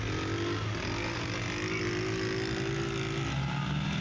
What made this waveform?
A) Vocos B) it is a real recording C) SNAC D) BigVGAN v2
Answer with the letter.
B